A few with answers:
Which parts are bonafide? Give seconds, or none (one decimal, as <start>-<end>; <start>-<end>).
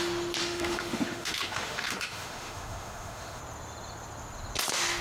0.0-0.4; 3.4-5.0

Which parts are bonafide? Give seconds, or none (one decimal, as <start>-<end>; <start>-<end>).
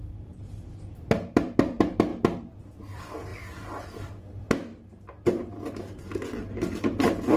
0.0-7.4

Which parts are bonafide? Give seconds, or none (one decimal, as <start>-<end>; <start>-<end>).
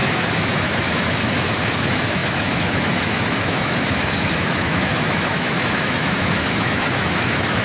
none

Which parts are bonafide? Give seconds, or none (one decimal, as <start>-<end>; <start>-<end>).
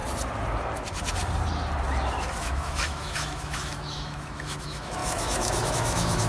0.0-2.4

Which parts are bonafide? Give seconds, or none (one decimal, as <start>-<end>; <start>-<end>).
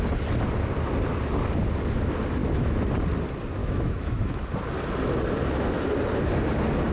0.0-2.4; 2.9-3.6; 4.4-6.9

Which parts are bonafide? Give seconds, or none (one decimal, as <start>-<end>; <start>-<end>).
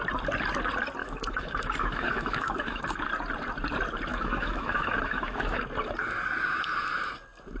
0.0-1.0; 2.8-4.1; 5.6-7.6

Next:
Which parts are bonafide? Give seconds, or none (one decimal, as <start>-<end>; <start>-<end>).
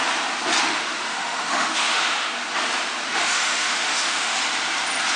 0.0-0.6; 2.3-3.1; 4.4-5.2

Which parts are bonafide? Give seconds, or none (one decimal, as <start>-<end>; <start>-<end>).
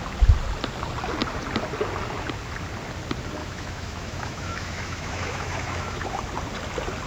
0.0-3.4; 6.2-7.1